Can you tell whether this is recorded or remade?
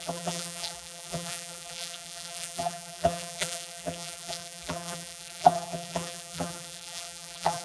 remade